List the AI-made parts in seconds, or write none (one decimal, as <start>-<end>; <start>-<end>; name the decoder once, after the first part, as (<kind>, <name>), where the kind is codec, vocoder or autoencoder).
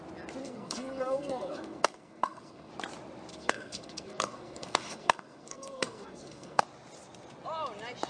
0.4-2.7 (codec, SNAC); 3.3-6.6